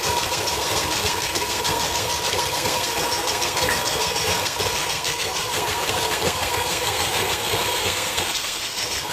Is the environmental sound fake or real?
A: fake